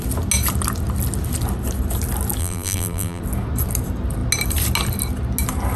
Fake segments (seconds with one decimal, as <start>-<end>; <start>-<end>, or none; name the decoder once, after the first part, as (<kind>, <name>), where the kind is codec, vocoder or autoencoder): 2.4-3.2 (vocoder, BigVGAN v2)